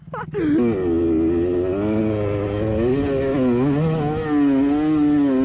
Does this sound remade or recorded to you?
recorded